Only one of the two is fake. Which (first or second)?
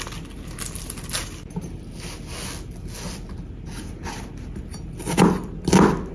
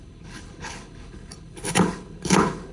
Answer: second